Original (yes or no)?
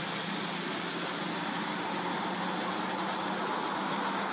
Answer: yes